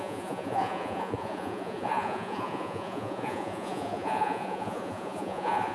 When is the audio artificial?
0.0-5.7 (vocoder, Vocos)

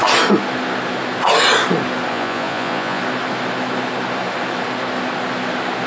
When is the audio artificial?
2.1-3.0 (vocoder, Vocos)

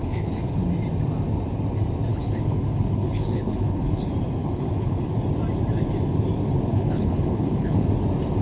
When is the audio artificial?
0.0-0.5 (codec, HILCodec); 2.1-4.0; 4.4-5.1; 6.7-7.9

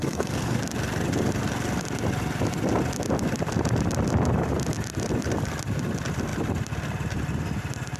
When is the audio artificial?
0.0-0.6 (codec, SNAC)

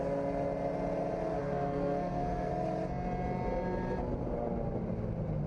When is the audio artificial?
1.4-2.5 (codec, SNAC)

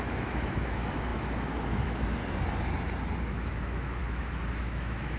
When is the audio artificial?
0.0-2.2 (autoencoder, DAC-VAE); 3.2-5.2

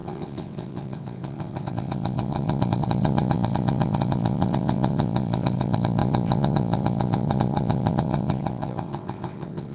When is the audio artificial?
0.0-9.7 (vocoder, WaveNeXt)

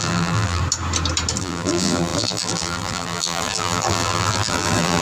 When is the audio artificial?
0.0-0.6 (vocoder, BigVGAN v2); 1.4-5.0